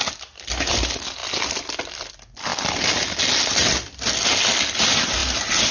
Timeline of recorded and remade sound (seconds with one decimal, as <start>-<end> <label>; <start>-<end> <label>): 0.0-3.6 recorded; 3.6-4.5 remade; 4.5-5.2 recorded; 5.2-5.7 remade